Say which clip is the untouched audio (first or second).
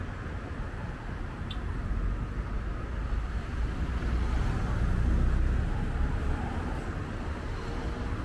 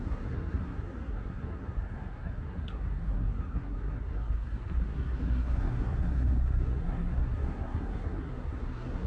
first